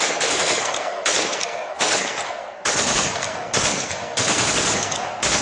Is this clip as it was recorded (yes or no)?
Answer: no